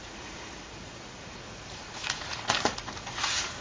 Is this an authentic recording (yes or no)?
no